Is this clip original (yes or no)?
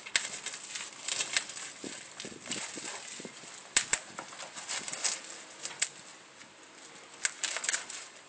yes